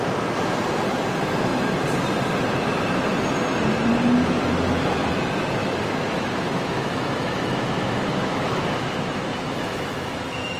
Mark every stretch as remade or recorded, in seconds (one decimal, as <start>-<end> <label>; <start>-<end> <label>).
0.0-5.6 recorded; 5.6-10.6 remade